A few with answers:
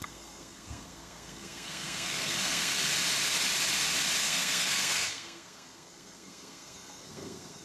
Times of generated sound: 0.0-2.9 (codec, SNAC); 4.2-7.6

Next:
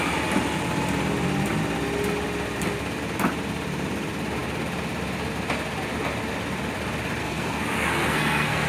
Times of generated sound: 7.2-8.7 (codec, SNAC)

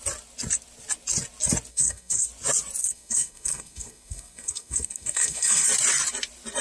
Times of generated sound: 1.7-2.3 (codec, SNAC); 2.8-5.7

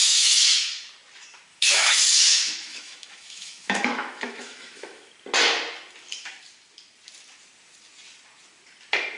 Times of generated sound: 0.0-0.9 (autoencoder, DAC-VAE); 1.5-5.1

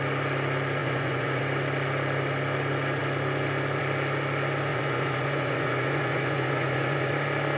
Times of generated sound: 0.8-1.4 (vocoder, Vocos); 4.7-7.1

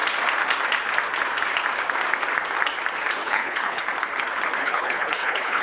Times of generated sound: 3.2-3.8 (codec, HILCodec); 4.6-5.6

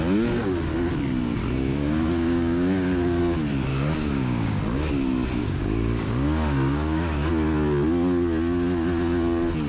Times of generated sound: 1.4-3.2 (codec, DAC); 3.7-4.6; 5.4-7.3